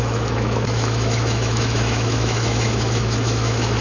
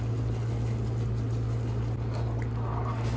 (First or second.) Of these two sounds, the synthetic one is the first